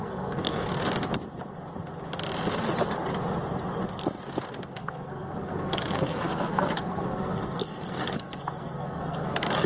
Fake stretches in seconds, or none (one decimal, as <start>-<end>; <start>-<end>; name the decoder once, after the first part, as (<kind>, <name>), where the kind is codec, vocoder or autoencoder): 0.0-0.7 (codec, SNAC); 4.7-9.7